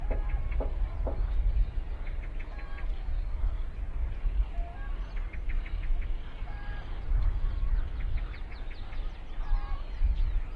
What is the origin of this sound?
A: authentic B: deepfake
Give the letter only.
A